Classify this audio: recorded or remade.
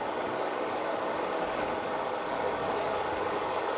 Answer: remade